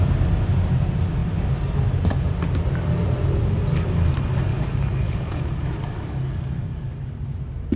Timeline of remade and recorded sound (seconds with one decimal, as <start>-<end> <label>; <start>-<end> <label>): 0.0-4.5 recorded; 4.5-7.1 remade; 7.1-7.8 recorded

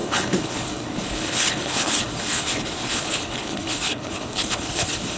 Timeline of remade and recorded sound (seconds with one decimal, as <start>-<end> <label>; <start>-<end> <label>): 0.0-5.2 remade

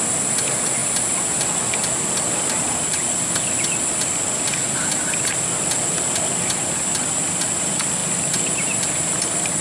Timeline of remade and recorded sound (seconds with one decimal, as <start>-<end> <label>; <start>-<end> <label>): 0.0-9.6 recorded

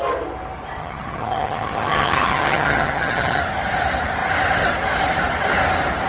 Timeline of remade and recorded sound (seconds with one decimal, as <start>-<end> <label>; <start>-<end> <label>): 0.0-0.8 recorded; 0.8-3.4 remade; 3.4-6.1 recorded

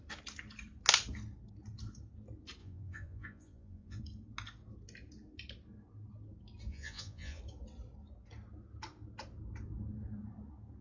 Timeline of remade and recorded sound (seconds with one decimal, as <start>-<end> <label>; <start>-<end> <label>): 0.0-2.6 recorded; 2.6-4.0 remade; 4.0-6.7 recorded; 6.7-7.4 remade; 7.4-10.8 recorded

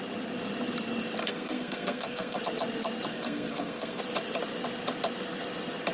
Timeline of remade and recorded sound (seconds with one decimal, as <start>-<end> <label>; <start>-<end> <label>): 0.0-1.2 recorded; 1.2-2.4 remade; 2.4-3.1 recorded; 3.1-4.0 remade; 4.0-5.9 recorded